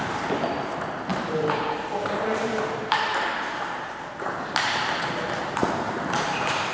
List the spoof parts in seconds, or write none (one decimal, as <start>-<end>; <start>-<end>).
1.1-4.8